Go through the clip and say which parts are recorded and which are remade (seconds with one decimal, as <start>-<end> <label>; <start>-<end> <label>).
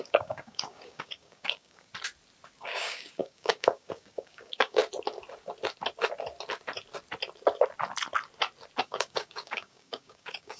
0.0-1.9 remade; 1.9-2.6 recorded; 2.6-4.8 remade; 4.8-8.8 recorded; 8.8-10.6 remade